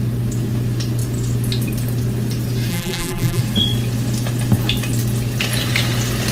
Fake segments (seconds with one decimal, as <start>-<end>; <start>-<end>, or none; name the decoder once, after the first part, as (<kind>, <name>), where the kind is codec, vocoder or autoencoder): 2.7-3.4 (vocoder, BigVGAN v2)